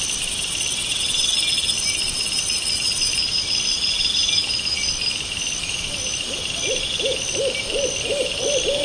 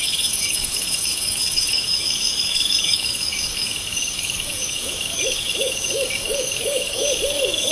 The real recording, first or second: first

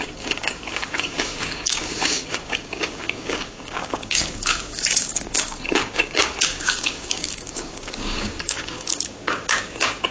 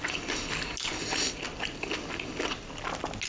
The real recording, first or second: second